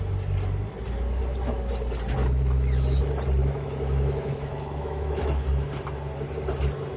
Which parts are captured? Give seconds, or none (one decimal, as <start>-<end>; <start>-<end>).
0.0-2.2; 3.0-3.4; 5.3-7.0